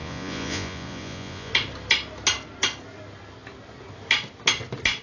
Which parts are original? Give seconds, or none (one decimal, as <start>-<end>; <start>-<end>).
1.5-5.0